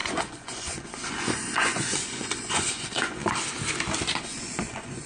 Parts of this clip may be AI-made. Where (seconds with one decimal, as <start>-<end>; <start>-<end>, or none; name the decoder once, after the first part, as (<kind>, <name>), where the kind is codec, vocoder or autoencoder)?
0.0-3.2 (vocoder, Vocos); 4.2-5.1